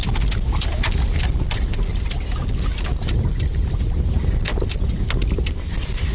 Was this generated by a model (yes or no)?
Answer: no